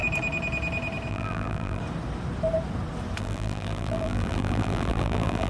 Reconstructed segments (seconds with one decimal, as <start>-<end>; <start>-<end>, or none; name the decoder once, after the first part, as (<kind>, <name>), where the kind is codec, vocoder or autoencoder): 1.1-1.8 (vocoder, BigVGAN v2); 3.2-5.5